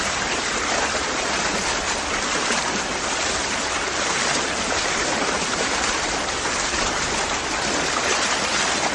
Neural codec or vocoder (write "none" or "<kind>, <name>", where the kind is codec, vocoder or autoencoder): none